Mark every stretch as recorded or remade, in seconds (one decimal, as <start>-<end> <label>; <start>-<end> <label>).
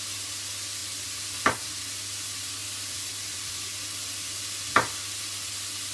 0.0-2.6 recorded; 2.6-3.5 remade; 3.5-5.9 recorded